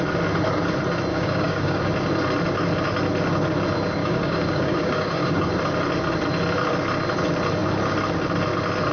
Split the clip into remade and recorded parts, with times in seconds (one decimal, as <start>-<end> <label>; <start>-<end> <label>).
0.0-1.1 recorded; 1.1-1.8 remade; 1.8-4.0 recorded; 4.0-5.5 remade; 5.5-8.9 recorded